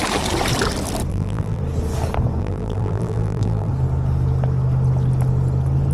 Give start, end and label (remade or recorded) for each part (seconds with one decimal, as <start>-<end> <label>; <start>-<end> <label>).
0.0-1.1 recorded; 1.1-1.6 remade; 1.6-2.4 recorded; 2.4-3.7 remade; 3.7-5.9 recorded